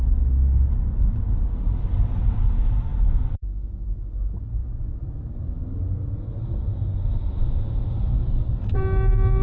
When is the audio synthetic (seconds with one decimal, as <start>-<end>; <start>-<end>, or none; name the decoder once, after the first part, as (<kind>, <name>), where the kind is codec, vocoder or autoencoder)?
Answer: none